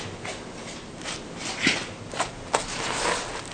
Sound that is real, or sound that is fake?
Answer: real